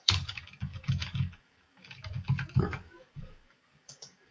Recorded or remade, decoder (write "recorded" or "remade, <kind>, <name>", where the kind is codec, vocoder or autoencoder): remade, codec, DAC